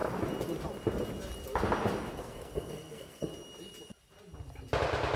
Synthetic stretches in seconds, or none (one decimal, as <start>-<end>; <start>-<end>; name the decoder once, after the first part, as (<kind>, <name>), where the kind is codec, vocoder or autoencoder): 2.1-3.3 (codec, SNAC)